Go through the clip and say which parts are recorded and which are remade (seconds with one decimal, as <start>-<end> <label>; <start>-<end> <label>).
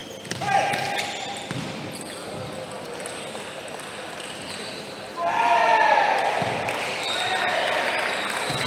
0.0-8.7 recorded